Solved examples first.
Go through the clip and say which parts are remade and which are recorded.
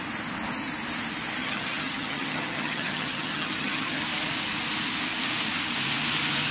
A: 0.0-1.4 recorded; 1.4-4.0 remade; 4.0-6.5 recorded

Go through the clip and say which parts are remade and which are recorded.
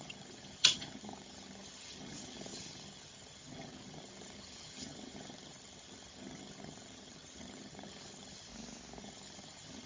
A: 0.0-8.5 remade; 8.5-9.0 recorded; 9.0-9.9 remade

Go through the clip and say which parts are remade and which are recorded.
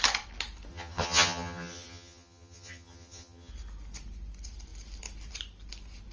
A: 0.0-0.7 recorded; 0.7-3.5 remade; 3.5-6.1 recorded